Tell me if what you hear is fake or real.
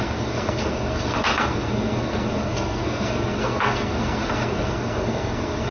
fake